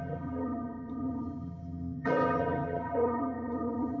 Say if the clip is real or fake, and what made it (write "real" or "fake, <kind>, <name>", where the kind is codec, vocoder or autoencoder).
fake, vocoder, HiFi-GAN